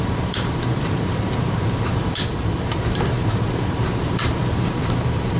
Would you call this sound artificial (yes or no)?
yes